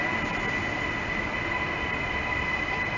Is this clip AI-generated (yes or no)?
no